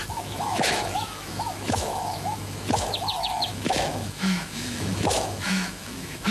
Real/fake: fake